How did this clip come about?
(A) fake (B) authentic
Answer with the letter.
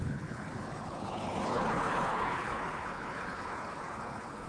A